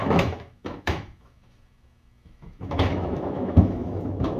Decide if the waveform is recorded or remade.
remade